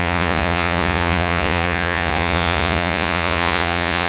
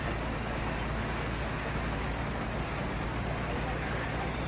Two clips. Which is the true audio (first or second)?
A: second